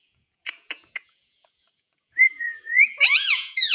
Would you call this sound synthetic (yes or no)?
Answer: yes